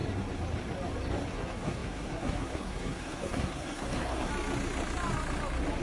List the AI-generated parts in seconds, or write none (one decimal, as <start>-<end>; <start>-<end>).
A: 1.3-4.3